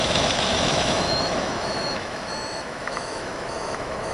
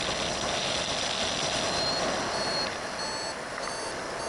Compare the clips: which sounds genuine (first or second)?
second